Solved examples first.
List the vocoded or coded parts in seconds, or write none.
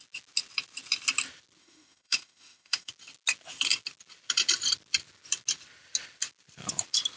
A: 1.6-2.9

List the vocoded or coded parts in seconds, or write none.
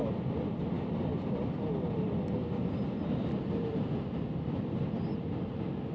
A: 1.1-4.6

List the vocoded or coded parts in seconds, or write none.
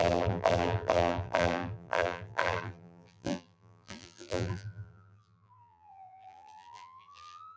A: 0.0-7.6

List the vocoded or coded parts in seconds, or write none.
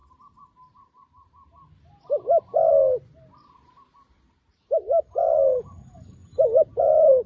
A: 4.4-6.2; 6.8-7.3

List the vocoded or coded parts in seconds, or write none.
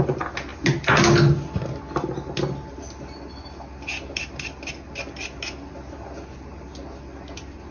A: none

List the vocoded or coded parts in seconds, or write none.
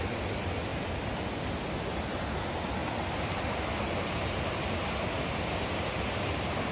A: none